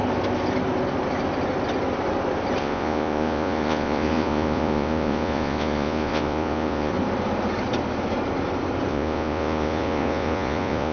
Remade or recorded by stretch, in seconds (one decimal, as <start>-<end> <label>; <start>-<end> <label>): 0.0-2.6 recorded; 2.6-6.9 remade; 6.9-8.9 recorded; 8.9-10.9 remade